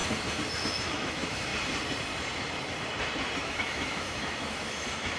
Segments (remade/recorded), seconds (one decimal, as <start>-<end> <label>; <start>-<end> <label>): 0.0-0.6 recorded; 0.6-1.5 remade; 1.5-3.4 recorded; 3.4-5.2 remade